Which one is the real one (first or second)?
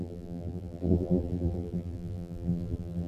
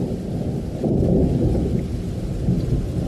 second